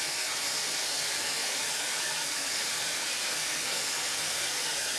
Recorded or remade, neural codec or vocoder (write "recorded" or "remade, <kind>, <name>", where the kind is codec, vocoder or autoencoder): remade, codec, SNAC